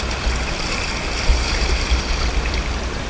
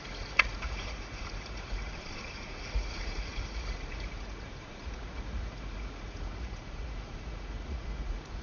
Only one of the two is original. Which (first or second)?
first